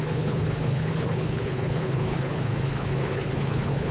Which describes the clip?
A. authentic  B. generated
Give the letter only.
B